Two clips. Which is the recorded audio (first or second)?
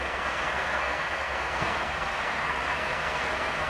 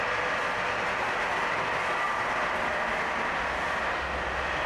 second